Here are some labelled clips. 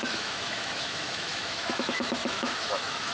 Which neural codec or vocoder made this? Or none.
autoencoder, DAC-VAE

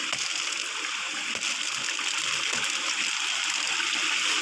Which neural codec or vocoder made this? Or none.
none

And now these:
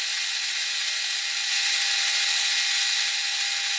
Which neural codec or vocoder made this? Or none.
none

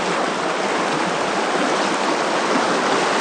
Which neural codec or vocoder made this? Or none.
none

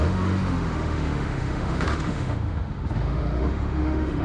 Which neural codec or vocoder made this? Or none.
autoencoder, DAC-VAE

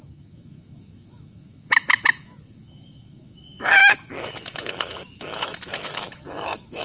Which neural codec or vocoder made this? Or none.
autoencoder, DAC-VAE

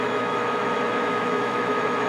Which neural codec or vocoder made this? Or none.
autoencoder, DAC-VAE